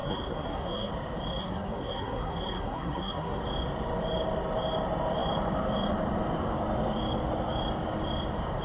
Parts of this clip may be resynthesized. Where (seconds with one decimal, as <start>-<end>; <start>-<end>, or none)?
0.0-0.9; 1.4-3.4